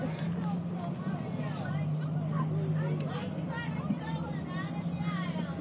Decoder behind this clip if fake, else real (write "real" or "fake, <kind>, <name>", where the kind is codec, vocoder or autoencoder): real